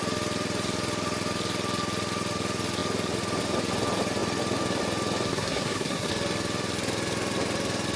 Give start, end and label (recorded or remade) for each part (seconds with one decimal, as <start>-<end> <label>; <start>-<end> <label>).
0.0-5.3 recorded; 5.3-6.1 remade; 6.1-8.0 recorded